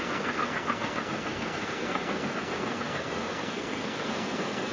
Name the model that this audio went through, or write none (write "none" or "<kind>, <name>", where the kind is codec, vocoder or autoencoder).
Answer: codec, SNAC